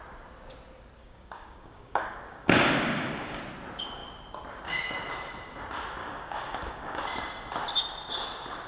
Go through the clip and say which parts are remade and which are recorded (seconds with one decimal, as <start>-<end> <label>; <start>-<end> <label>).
0.0-1.0 recorded; 1.0-3.4 remade; 3.4-6.0 recorded; 6.0-7.0 remade; 7.0-8.7 recorded